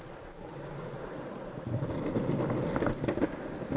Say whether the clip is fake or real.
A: real